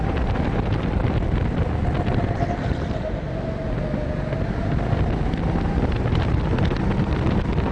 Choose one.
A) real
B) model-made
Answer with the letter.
A